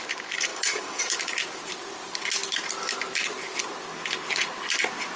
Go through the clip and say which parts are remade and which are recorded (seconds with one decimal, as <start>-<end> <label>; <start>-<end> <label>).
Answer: 0.0-0.5 recorded; 0.5-1.0 remade; 1.0-5.2 recorded